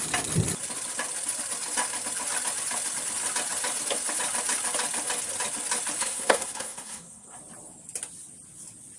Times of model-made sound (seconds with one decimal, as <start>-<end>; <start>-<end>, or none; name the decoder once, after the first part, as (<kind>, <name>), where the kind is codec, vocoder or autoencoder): 6.0-7.4 (codec, SNAC)